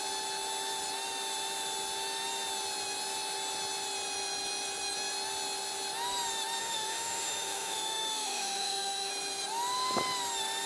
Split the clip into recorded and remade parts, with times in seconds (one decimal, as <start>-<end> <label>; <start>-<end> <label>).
0.0-6.6 recorded; 6.6-9.1 remade; 9.1-10.7 recorded